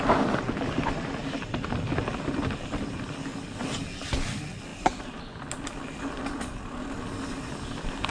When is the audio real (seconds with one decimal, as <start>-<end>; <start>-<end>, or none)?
0.0-1.2; 2.7-8.1